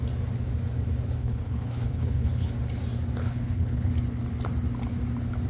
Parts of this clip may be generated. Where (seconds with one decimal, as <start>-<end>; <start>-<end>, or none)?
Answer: 1.2-2.5; 3.2-3.9